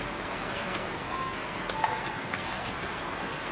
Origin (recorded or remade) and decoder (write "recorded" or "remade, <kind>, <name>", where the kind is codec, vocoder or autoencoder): remade, codec, SNAC